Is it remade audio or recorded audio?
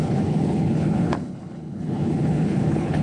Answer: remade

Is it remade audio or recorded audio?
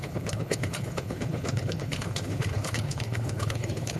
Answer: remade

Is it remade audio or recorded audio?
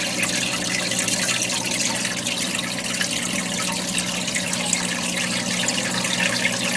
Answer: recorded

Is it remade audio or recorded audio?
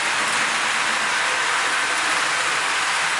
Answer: recorded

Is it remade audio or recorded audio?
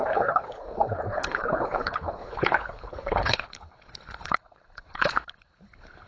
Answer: remade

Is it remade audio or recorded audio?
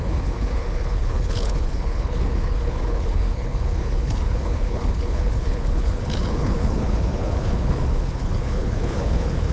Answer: remade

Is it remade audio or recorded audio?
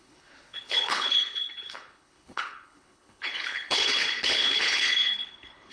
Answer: remade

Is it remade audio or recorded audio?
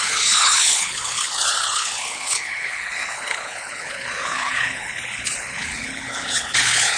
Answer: remade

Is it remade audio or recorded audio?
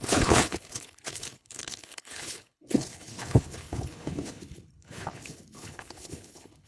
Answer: remade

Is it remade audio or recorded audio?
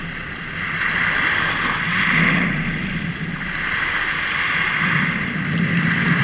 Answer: recorded